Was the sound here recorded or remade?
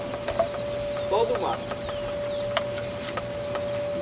recorded